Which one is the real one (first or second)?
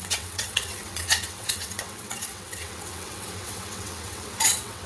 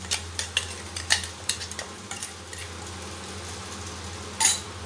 second